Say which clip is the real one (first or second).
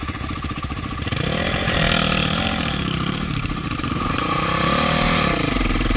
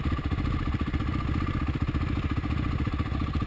second